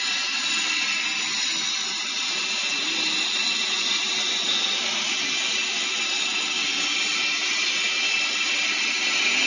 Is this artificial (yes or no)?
no